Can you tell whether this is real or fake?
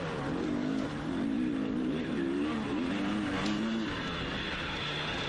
real